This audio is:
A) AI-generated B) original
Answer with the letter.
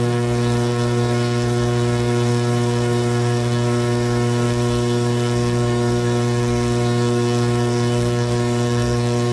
A